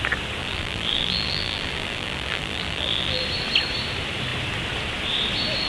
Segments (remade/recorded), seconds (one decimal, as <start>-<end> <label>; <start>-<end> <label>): 0.0-0.4 recorded; 0.4-3.2 remade; 3.2-5.7 recorded